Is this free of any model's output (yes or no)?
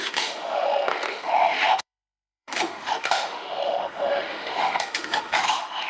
no